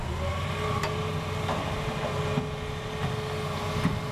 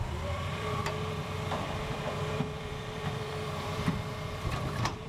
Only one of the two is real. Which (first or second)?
first